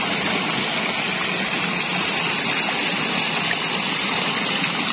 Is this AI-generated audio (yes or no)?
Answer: no